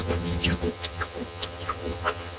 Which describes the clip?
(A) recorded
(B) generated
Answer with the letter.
B